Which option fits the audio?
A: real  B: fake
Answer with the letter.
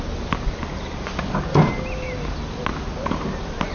A